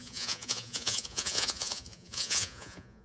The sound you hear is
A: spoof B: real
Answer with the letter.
A